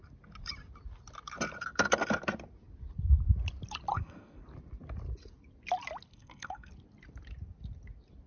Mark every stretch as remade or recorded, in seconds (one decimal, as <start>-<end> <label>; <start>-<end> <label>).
0.0-3.9 recorded; 3.9-4.4 remade; 4.4-6.1 recorded; 6.1-6.7 remade; 6.7-8.3 recorded